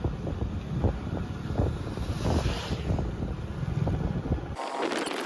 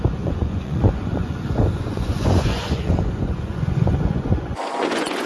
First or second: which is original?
first